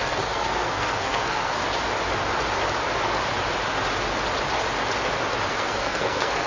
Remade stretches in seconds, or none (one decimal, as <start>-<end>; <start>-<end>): 0.0-1.6; 5.5-6.5